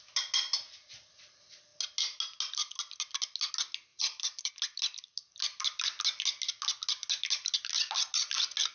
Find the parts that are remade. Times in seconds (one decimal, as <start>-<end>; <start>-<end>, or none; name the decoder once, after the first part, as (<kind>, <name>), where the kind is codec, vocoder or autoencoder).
3.9-4.5 (vocoder, BigVGAN v2)